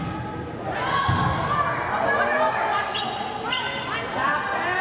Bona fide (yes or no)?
yes